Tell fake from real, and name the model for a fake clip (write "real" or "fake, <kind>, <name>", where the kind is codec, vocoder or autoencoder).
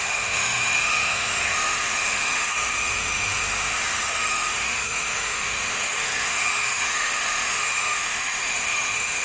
fake, autoencoder, DAC-VAE